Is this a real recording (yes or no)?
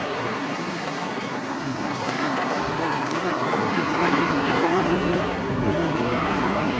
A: no